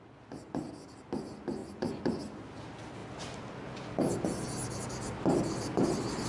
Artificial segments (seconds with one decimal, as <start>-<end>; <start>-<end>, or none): 1.6-2.2